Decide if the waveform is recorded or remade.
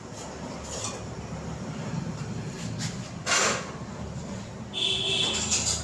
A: recorded